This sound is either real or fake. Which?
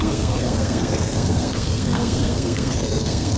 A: fake